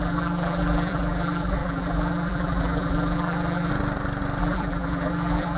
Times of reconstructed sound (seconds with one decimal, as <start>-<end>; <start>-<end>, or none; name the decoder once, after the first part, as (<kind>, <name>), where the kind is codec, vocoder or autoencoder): 0.0-3.7 (vocoder, BigVGAN v2); 4.4-5.6